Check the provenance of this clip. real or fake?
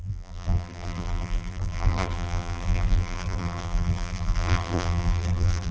fake